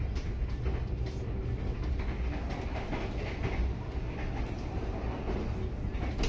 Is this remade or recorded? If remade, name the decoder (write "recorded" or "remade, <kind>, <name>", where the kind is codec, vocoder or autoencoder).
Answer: recorded